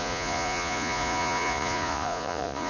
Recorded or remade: remade